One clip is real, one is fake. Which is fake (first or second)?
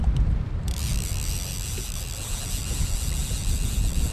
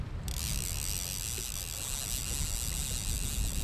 first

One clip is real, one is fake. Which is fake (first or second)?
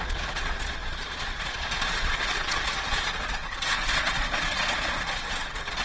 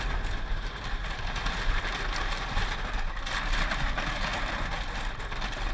first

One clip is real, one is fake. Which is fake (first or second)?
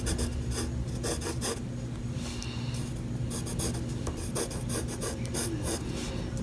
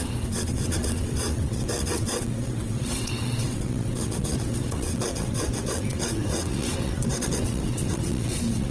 second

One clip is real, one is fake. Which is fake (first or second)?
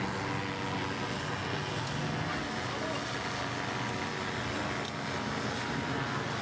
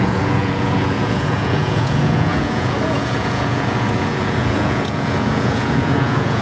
second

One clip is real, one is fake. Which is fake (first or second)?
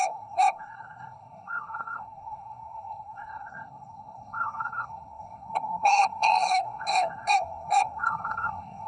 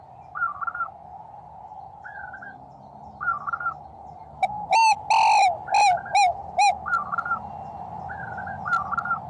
first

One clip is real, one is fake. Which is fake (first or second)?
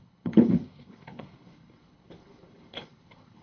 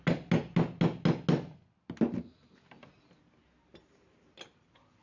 first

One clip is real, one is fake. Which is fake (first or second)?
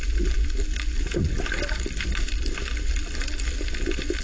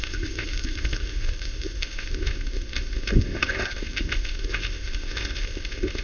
second